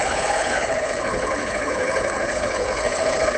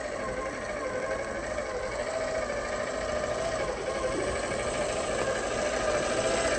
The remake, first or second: first